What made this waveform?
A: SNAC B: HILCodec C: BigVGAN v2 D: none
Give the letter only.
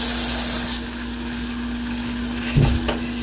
D